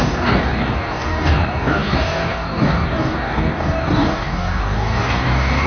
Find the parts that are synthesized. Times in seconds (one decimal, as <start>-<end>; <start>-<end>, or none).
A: 0.0-5.7